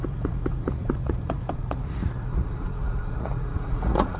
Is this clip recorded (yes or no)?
no